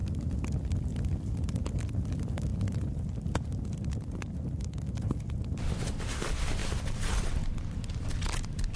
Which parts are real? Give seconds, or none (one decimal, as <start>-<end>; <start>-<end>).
0.0-8.8